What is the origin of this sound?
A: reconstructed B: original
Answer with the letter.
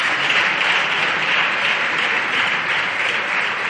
A